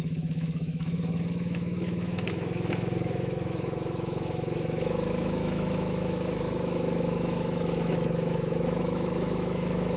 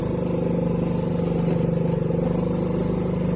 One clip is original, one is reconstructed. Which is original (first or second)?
second